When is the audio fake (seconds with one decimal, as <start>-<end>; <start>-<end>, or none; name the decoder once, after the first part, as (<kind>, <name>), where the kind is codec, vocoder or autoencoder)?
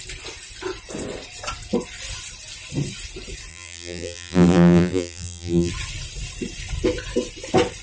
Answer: 3.5-5.7 (vocoder, BigVGAN v2)